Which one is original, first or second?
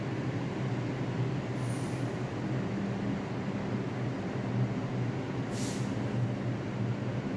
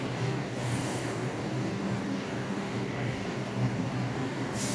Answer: first